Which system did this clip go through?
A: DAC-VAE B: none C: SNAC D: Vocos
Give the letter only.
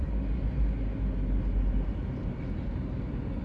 B